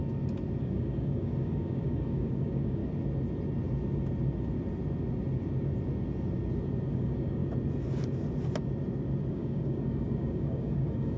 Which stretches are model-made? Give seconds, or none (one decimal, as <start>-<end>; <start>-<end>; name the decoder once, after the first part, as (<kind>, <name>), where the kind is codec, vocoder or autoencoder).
0.6-2.8 (codec, DAC); 6.9-7.4; 9.3-11.2